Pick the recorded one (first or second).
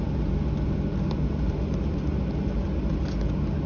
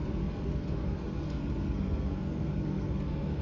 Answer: first